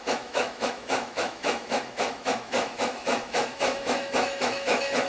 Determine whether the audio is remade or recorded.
remade